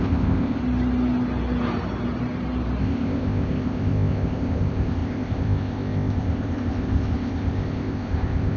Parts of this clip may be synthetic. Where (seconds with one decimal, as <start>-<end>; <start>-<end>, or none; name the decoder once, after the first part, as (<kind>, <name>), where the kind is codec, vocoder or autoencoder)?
0.0-0.6 (codec, ZipCodec); 2.8-8.6